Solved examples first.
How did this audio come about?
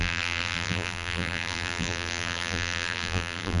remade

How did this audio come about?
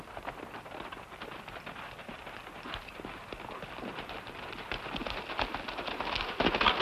recorded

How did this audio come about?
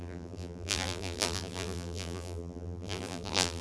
remade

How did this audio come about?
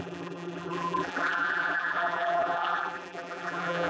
remade